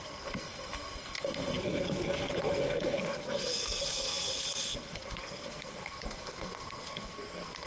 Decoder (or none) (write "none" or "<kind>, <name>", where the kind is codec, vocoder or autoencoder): codec, SNAC